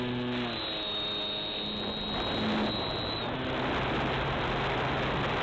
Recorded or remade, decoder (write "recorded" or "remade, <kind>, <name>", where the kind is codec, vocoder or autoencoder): recorded